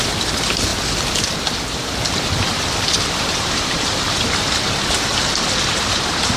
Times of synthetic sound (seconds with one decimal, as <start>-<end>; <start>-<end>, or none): 0.0-0.7; 3.2-5.1; 5.7-6.4